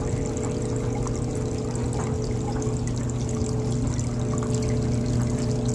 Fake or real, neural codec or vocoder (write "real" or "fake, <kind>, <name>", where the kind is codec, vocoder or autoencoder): real